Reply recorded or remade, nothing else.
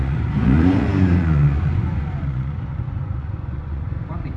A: remade